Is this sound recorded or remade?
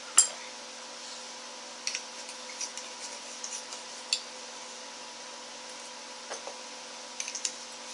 recorded